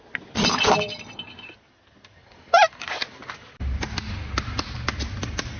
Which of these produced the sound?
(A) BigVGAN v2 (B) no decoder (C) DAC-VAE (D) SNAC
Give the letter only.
B